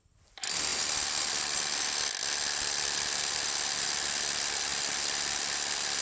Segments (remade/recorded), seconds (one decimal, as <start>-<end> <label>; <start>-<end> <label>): 0.0-6.0 recorded